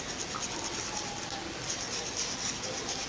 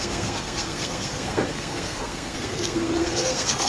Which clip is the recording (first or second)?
first